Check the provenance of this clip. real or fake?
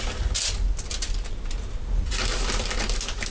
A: real